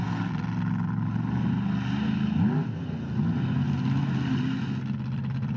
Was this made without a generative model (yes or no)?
yes